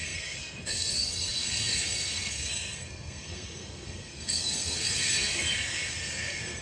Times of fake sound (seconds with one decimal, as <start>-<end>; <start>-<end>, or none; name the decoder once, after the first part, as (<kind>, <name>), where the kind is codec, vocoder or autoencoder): 0.0-6.6 (codec, SNAC)